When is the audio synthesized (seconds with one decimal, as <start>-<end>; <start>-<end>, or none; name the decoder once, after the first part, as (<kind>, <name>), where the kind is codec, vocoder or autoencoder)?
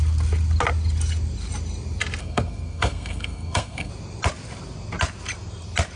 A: 2.2-3.9 (codec, SNAC)